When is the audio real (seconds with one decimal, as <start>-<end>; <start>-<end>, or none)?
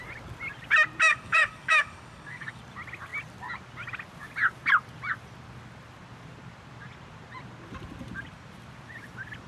0.0-1.1; 2.6-9.5